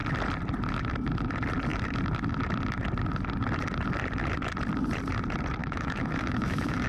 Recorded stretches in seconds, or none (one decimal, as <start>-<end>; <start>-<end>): 0.0-5.6